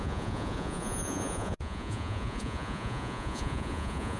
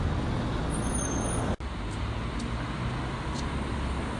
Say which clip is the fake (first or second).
first